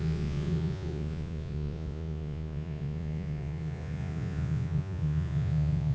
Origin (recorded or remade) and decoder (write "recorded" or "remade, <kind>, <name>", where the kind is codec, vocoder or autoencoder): remade, vocoder, Vocos